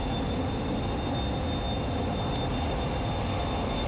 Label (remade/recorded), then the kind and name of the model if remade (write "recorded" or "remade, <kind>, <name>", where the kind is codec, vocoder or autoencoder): recorded